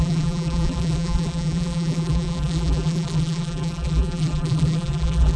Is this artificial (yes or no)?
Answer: yes